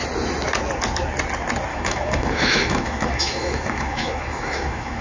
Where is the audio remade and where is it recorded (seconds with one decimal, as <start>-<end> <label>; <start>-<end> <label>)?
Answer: 0.0-1.7 recorded; 1.7-5.0 remade